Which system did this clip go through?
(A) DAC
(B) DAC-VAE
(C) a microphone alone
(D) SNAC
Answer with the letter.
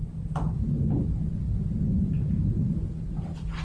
C